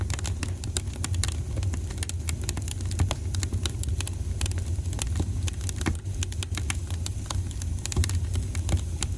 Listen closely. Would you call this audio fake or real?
real